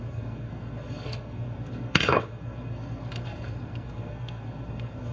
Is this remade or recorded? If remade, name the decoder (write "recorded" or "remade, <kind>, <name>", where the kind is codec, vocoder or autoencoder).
remade, codec, SNAC